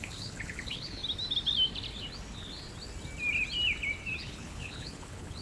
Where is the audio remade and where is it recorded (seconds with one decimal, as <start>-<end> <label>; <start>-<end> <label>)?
0.0-1.0 remade; 1.0-4.2 recorded; 4.2-5.4 remade

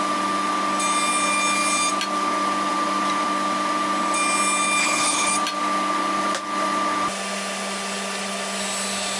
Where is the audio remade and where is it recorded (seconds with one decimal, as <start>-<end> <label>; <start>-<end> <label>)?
0.0-4.8 recorded; 4.8-5.3 remade; 5.3-9.2 recorded

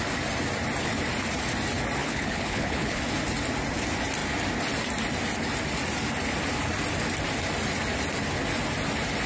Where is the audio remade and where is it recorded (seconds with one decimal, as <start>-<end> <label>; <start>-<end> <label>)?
0.0-2.0 recorded; 2.0-3.0 remade; 3.0-9.3 recorded

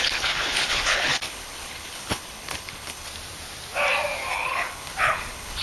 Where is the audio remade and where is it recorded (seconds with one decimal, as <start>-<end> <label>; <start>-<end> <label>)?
0.0-3.1 remade; 3.1-4.3 recorded; 4.3-5.6 remade

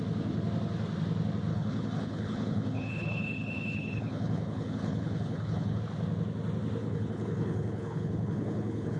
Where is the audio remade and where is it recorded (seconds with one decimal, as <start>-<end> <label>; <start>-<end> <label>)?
0.0-1.5 recorded; 1.5-5.8 remade; 5.8-6.8 recorded; 6.8-9.0 remade